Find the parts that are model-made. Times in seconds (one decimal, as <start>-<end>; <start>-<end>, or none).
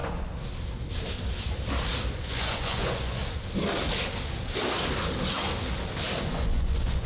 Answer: 2.1-3.2; 6.2-7.1